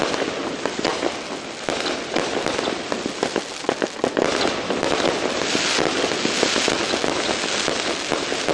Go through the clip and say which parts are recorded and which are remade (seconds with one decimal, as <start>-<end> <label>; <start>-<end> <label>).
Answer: 0.0-8.5 recorded